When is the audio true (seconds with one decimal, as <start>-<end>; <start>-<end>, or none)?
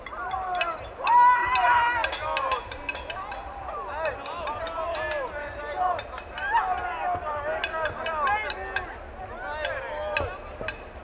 0.0-11.0